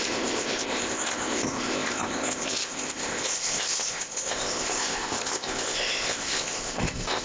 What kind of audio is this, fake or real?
fake